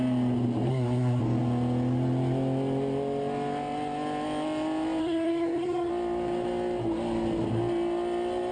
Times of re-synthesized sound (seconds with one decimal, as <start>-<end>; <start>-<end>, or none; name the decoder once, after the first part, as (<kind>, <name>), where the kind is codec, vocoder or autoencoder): 0.7-1.2 (codec, SNAC); 5.0-5.9